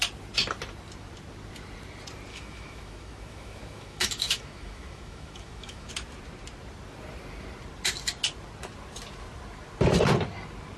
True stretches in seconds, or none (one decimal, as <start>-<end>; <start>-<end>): 0.0-2.3; 5.9-10.8